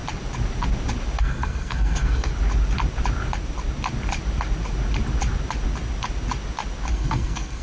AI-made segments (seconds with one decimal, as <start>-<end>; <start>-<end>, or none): 1.2-2.3; 6.9-7.6